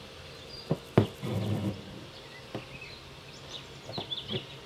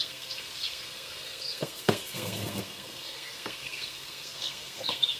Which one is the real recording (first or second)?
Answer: first